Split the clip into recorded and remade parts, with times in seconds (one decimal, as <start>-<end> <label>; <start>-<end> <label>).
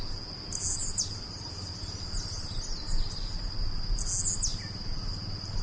0.0-5.6 recorded